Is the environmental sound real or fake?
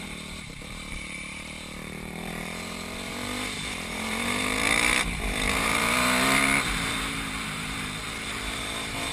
fake